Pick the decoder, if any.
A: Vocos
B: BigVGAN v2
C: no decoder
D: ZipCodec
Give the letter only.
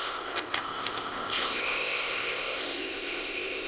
D